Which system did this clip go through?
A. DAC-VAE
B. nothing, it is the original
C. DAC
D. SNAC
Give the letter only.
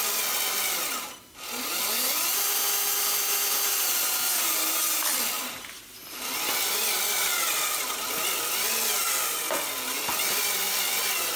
B